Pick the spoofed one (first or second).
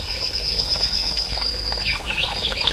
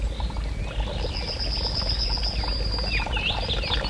first